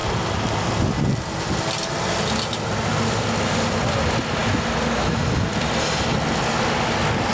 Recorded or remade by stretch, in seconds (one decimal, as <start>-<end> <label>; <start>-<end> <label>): 0.0-7.3 recorded